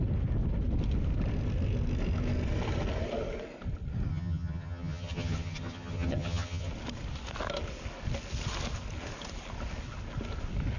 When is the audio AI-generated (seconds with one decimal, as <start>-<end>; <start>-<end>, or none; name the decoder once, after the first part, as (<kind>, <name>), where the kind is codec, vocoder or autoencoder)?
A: 4.1-6.7 (vocoder, HiFi-GAN)